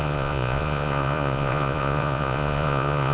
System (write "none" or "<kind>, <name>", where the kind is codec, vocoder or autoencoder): vocoder, Vocos